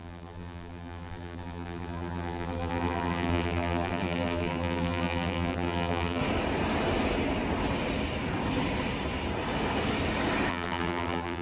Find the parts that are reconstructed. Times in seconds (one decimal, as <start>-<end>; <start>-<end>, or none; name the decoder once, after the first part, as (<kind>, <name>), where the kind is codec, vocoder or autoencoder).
0.0-6.2 (vocoder, BigVGAN v2); 10.5-11.4